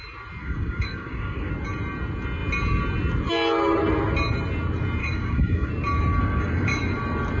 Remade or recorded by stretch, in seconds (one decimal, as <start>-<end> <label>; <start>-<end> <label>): 0.0-0.4 recorded; 0.4-1.5 remade; 1.5-5.0 recorded; 5.0-5.7 remade; 5.7-6.2 recorded; 6.2-6.8 remade; 6.8-7.4 recorded